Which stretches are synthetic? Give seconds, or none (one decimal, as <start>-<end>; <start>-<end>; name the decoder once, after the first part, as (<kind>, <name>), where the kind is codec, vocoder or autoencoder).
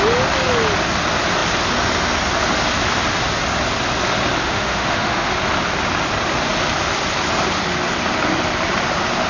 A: 4.4-5.3 (autoencoder, DAC-VAE)